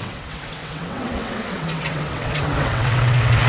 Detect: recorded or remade remade